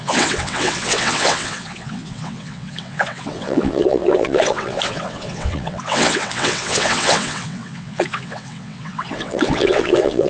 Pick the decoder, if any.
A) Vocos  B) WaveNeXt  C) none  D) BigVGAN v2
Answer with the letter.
B